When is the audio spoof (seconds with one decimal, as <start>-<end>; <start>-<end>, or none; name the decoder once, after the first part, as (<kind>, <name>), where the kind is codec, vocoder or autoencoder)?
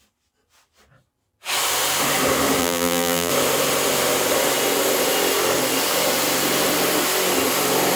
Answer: 2.6-3.3 (vocoder, BigVGAN v2)